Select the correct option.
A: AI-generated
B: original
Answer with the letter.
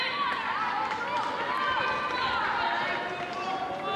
B